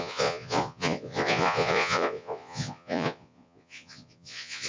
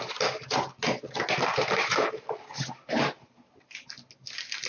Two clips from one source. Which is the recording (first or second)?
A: second